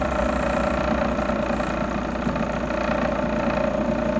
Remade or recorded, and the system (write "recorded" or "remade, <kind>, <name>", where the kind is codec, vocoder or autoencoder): recorded